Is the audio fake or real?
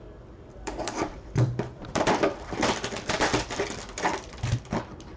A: fake